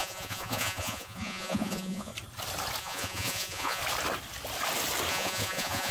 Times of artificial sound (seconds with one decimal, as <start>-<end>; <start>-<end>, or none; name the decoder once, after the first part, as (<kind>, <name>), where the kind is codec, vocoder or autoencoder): 0.0-2.1 (vocoder, Vocos); 2.8-3.8; 5.1-5.9